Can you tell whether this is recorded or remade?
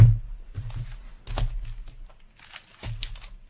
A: recorded